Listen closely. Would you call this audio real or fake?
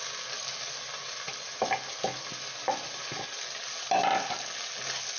real